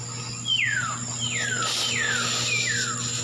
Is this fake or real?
real